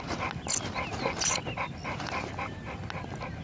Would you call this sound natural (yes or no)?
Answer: yes